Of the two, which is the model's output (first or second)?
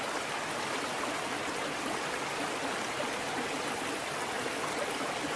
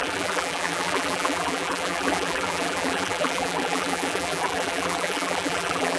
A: second